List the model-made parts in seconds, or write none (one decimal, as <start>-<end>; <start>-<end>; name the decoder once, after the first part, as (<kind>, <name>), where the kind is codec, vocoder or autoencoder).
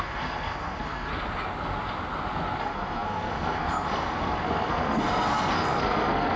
0.0-1.1 (codec, SNAC); 2.6-6.4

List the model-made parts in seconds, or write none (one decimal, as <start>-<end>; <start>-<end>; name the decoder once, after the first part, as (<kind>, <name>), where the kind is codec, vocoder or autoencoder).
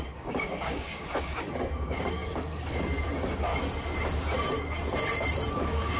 0.0-3.5 (codec, DAC); 5.5-6.0